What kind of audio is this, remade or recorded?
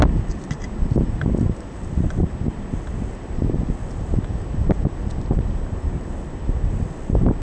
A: recorded